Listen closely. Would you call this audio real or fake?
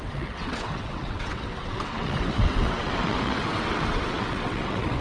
fake